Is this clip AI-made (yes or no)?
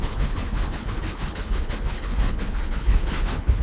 yes